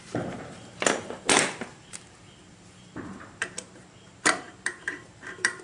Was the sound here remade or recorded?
remade